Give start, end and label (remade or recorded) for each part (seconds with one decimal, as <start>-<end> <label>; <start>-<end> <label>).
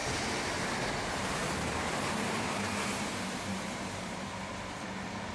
0.0-0.9 recorded; 0.9-5.3 remade